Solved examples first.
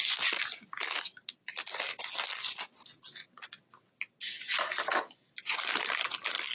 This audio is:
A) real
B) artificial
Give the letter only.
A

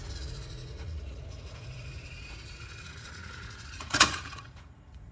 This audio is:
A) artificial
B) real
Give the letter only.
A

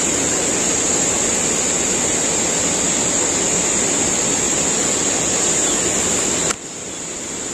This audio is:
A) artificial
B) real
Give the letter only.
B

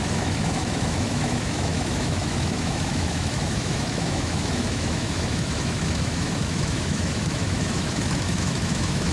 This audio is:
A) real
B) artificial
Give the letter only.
B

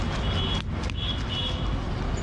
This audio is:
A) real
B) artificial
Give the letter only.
A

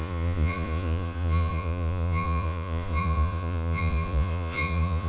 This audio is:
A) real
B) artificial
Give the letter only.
B